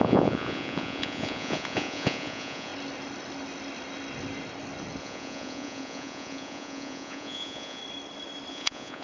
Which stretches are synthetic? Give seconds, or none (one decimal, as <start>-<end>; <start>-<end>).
0.0-2.7; 5.0-7.8; 8.5-9.0